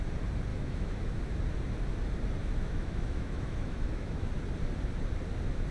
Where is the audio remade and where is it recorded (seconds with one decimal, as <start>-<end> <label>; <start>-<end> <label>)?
0.0-0.5 recorded; 0.5-1.2 remade; 1.2-2.4 recorded; 2.4-4.3 remade; 4.3-5.7 recorded

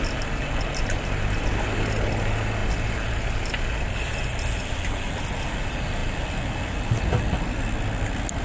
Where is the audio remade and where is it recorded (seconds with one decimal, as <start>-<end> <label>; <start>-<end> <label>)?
0.0-8.4 recorded

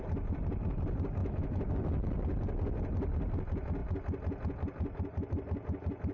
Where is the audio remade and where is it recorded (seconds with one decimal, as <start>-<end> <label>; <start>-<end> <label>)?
0.0-1.2 recorded; 1.2-1.7 remade; 1.7-6.1 recorded

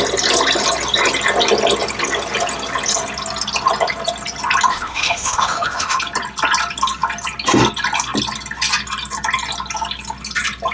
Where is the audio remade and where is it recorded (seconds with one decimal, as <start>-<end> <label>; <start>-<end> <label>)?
0.0-4.7 recorded; 4.7-6.0 remade; 6.0-10.7 recorded

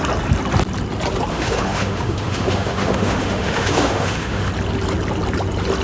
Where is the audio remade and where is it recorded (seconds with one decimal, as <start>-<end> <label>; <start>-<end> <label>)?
0.0-1.3 recorded; 1.3-4.5 remade; 4.5-5.8 recorded

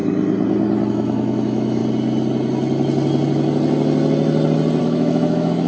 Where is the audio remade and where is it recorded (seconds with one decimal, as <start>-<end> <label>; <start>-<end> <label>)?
0.0-0.9 recorded; 0.9-1.8 remade; 1.8-4.8 recorded; 4.8-5.7 remade

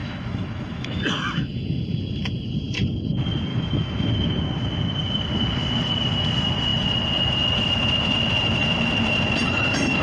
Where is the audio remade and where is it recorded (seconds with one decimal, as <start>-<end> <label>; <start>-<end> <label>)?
0.0-1.0 remade; 1.0-3.5 recorded; 3.5-4.1 remade; 4.1-10.0 recorded